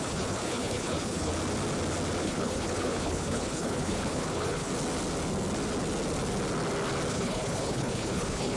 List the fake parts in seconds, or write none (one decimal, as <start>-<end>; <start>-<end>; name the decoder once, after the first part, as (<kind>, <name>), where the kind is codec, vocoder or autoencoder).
0.0-1.3 (codec, HILCodec); 2.2-4.7; 7.1-8.6